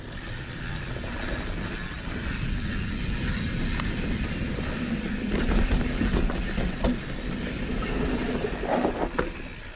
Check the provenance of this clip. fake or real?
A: real